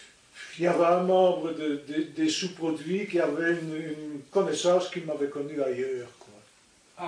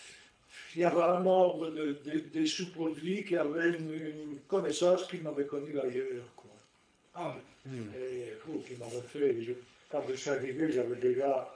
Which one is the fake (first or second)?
second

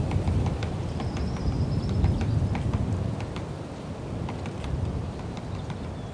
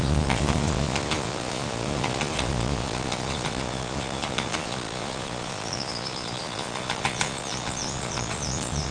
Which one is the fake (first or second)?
second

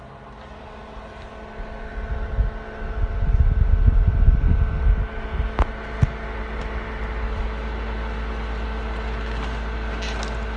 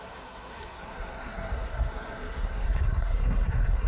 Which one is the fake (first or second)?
second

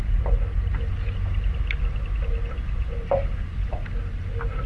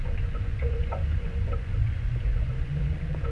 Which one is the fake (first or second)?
second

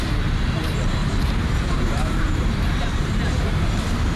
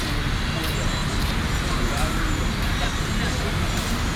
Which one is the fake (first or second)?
first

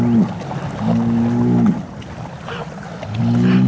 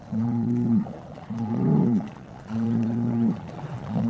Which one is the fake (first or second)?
second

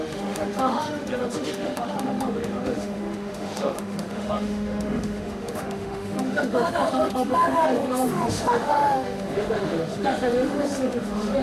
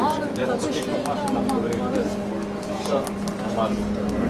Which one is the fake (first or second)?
first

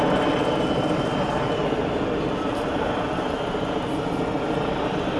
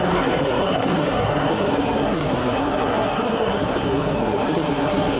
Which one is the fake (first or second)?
second